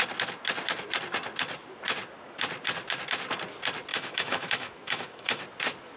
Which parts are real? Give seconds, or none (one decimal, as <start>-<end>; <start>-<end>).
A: 0.0-3.9; 5.4-6.0